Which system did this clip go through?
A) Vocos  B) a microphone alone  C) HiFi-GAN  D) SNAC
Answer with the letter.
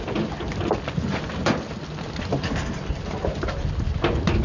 B